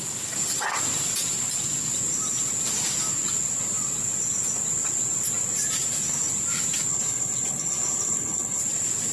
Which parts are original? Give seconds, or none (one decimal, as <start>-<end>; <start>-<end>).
0.0-6.9; 8.6-9.1